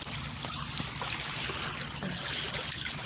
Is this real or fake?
real